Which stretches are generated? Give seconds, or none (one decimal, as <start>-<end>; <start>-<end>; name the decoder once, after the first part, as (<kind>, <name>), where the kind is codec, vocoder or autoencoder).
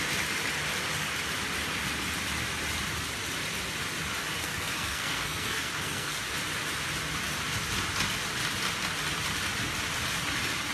4.4-6.2 (codec, SNAC)